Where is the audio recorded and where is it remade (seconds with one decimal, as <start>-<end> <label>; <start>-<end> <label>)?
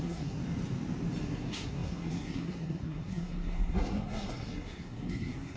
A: 0.0-0.4 remade; 0.4-1.2 recorded; 1.2-5.6 remade